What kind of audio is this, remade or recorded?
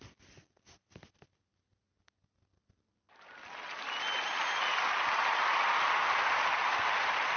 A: recorded